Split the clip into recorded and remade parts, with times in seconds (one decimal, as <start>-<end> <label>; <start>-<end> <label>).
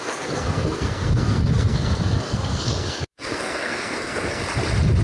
0.0-4.4 remade; 4.4-5.0 recorded